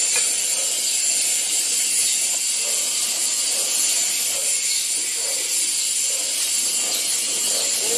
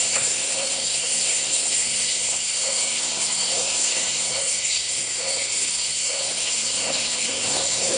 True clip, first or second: first